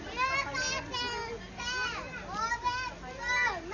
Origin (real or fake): real